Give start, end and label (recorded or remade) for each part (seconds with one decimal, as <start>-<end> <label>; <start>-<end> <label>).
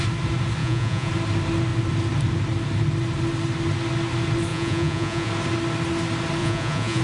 0.0-0.6 recorded; 0.6-1.1 remade; 1.1-4.5 recorded; 4.5-5.3 remade; 5.3-6.4 recorded; 6.4-7.0 remade